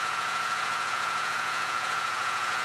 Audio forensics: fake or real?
fake